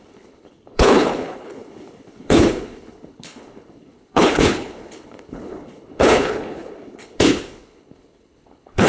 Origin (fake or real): fake